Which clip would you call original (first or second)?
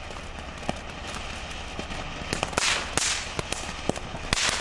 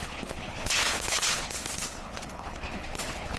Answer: first